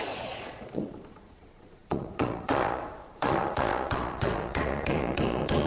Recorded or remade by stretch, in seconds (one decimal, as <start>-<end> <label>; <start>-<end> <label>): 0.0-5.7 remade